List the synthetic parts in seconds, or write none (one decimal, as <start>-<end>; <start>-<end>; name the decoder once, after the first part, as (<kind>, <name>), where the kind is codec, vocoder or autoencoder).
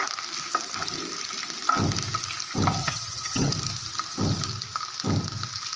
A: 2.8-3.5 (vocoder, HiFi-GAN)